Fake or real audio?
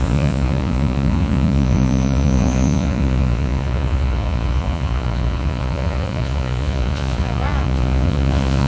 fake